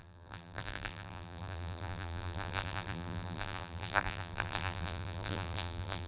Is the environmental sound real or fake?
fake